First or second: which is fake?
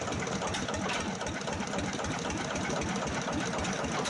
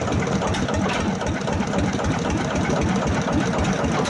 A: first